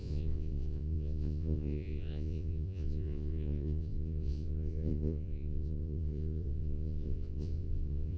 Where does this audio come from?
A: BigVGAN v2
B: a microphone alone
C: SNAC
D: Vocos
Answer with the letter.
D